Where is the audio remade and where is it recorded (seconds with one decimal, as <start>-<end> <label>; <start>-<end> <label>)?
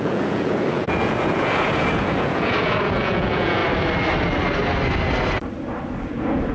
0.0-3.6 remade; 3.6-6.0 recorded; 6.0-6.5 remade